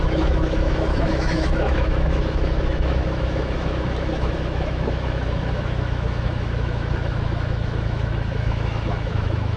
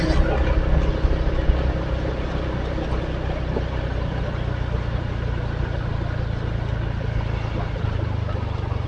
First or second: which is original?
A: second